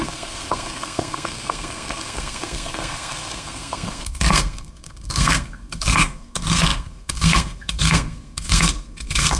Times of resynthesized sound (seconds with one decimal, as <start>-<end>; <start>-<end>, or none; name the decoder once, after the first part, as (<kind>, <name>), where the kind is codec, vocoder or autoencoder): 0.0-9.4 (codec, SNAC)

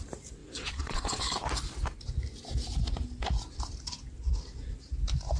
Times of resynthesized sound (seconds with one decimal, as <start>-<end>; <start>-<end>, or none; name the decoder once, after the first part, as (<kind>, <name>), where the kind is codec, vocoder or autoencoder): 0.4-1.2 (vocoder, Vocos)

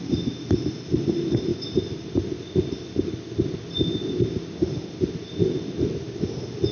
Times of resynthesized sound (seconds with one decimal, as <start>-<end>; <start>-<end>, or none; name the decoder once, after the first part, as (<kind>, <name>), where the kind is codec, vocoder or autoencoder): none

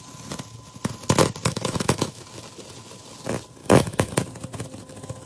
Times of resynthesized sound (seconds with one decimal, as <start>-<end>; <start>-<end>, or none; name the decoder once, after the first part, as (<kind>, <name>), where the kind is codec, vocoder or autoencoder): 1.4-2.2 (autoencoder, DAC-VAE); 3.6-4.1

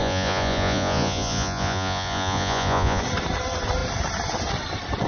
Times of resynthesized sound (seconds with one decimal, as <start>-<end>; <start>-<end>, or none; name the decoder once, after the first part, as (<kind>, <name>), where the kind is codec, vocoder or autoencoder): 0.0-3.0 (vocoder, Vocos)

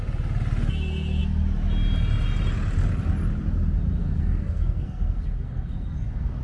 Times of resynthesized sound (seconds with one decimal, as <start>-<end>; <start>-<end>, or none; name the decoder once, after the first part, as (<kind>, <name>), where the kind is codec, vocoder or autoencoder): 4.0-6.4 (codec, SNAC)

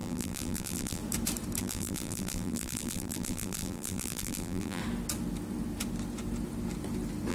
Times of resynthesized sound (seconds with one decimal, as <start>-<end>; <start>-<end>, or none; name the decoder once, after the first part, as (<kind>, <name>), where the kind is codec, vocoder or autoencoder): 0.0-1.0 (vocoder, BigVGAN v2); 1.6-4.8